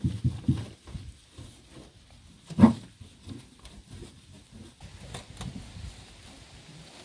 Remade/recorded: recorded